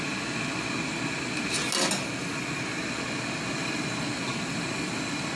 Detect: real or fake real